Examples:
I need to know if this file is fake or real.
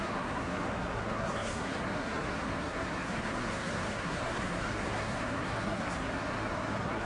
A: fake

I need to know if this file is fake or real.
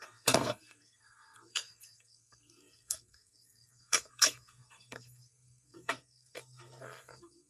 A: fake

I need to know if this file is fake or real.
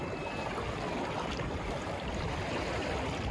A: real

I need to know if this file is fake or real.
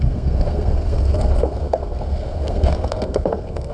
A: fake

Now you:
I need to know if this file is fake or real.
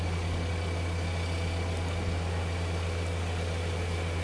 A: real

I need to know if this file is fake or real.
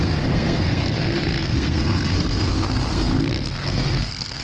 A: fake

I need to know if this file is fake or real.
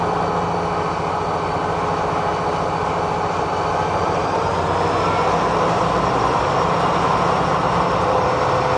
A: real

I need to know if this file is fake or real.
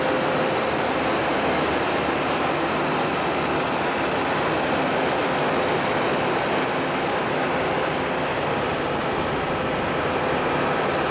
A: real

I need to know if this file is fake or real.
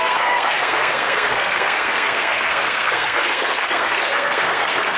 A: fake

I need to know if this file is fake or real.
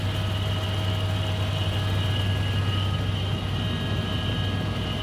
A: real